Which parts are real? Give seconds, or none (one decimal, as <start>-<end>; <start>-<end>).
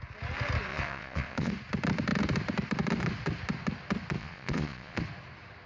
0.0-0.7; 1.5-4.2; 5.0-5.7